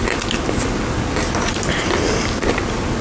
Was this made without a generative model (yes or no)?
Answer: yes